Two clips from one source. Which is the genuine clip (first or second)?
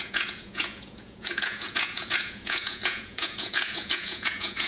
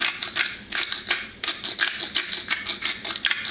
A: second